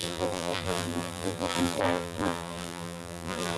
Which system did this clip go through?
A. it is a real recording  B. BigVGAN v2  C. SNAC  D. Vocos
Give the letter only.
B